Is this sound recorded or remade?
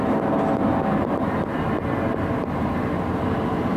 recorded